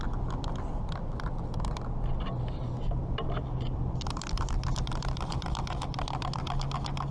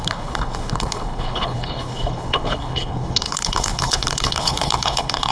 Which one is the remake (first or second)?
second